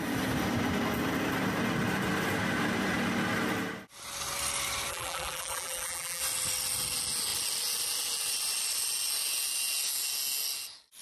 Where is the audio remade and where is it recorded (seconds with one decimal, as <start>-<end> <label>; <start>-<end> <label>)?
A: 0.0-4.9 recorded; 4.9-6.2 remade; 6.2-11.0 recorded